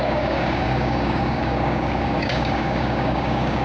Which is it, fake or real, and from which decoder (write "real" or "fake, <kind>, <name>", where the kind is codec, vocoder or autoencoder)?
fake, codec, DAC